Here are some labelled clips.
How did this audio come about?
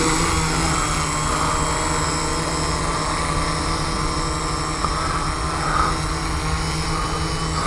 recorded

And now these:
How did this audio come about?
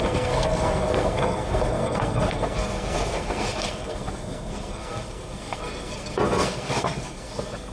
remade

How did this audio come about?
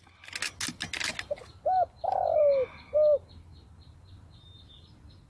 recorded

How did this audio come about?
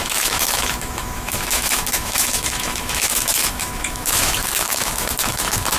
remade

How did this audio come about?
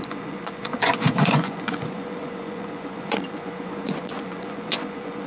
remade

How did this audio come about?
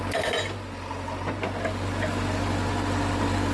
recorded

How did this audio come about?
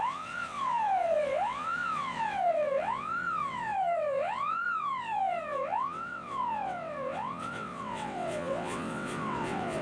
remade